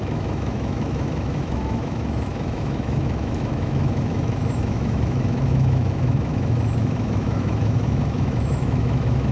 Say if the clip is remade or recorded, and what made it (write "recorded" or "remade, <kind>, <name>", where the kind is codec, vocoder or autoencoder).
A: remade, autoencoder, DAC-VAE